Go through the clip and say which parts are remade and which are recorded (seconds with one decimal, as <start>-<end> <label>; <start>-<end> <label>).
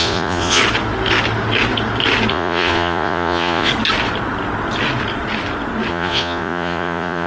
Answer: 0.0-0.6 remade; 0.6-2.3 recorded; 2.3-3.7 remade; 3.7-5.9 recorded; 5.9-7.3 remade